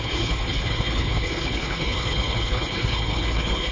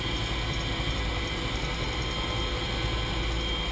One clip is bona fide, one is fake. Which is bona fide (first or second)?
second